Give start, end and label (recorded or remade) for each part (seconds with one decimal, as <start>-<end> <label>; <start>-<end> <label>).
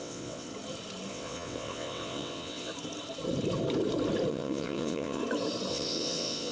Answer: 0.0-0.5 remade; 0.5-1.1 recorded; 1.1-2.7 remade; 2.7-4.3 recorded; 4.3-5.2 remade; 5.2-5.7 recorded; 5.7-6.5 remade